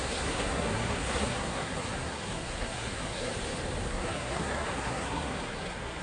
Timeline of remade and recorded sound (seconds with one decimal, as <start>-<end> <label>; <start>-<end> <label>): 0.0-3.3 remade; 3.3-3.9 recorded; 3.9-6.0 remade